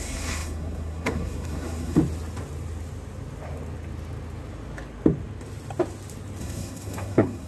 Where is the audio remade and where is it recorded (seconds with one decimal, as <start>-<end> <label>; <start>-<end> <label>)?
0.0-2.0 remade; 2.0-6.4 recorded; 6.4-7.5 remade